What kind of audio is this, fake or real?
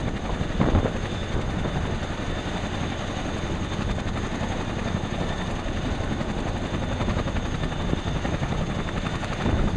real